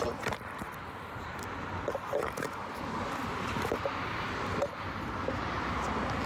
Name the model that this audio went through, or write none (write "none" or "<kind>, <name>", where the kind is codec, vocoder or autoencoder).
none